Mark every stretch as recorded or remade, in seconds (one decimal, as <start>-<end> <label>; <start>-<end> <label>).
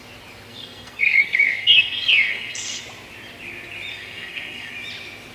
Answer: 0.0-0.5 recorded; 0.5-2.8 remade; 2.8-3.9 recorded; 3.9-4.7 remade; 4.7-5.3 recorded